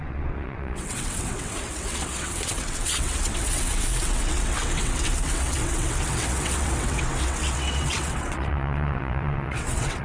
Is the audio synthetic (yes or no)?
yes